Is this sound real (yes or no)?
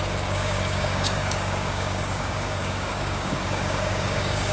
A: no